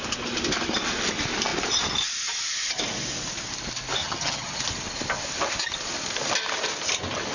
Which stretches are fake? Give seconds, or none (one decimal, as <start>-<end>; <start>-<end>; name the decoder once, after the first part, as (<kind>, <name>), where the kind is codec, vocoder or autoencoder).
4.0-4.6 (vocoder, HiFi-GAN)